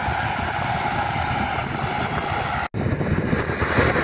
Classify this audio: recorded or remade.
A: recorded